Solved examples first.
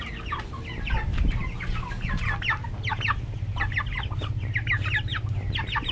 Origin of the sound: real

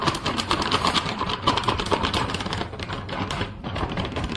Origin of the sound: fake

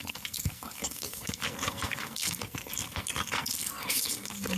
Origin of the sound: fake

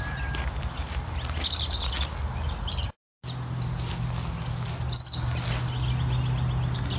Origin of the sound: real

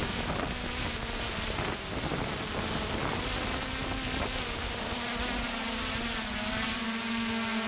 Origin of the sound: real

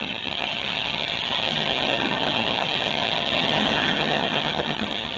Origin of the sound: fake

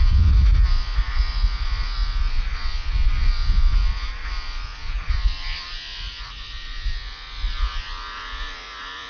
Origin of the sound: fake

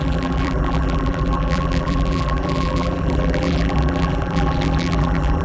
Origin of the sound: fake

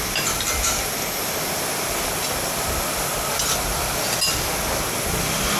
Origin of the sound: real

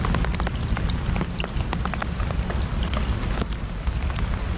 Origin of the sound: real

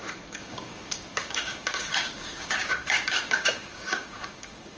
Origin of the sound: fake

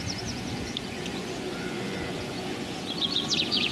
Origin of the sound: fake